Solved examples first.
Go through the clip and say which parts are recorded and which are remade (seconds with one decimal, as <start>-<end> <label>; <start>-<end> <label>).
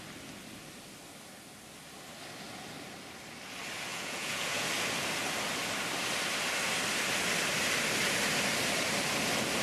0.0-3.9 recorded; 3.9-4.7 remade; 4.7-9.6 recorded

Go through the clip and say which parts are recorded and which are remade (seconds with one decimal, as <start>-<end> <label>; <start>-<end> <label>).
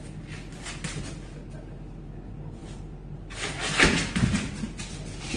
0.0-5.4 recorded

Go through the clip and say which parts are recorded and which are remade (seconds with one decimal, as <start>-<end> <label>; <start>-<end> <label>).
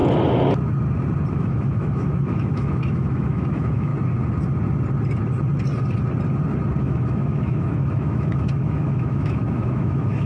0.0-1.3 recorded; 1.3-3.9 remade; 3.9-6.8 recorded; 6.8-10.3 remade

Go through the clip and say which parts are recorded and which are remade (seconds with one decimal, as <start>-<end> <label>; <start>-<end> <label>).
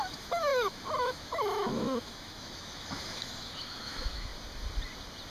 0.0-4.3 remade; 4.3-5.3 recorded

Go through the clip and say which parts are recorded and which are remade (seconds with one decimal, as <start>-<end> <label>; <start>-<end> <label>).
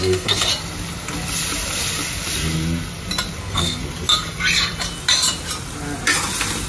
0.0-0.5 remade; 0.5-3.4 recorded; 3.4-3.8 remade; 3.8-6.7 recorded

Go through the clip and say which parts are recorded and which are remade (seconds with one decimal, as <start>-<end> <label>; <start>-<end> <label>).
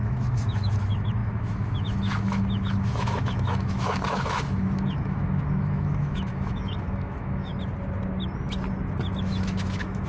0.0-7.5 remade; 7.5-9.2 recorded; 9.2-10.1 remade